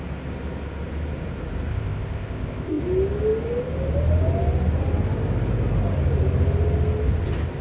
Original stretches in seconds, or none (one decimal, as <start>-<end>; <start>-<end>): 0.0-1.7; 2.8-7.6